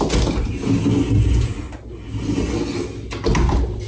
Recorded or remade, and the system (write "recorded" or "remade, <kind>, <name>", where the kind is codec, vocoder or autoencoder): recorded